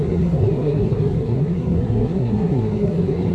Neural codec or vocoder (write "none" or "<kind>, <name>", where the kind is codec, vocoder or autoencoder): codec, SNAC